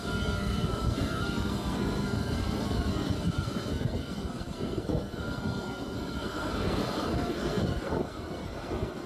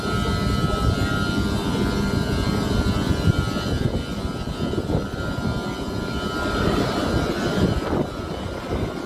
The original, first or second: second